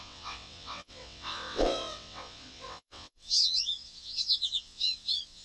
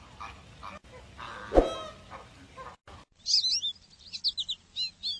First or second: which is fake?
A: first